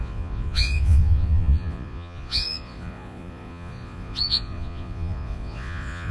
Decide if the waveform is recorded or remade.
remade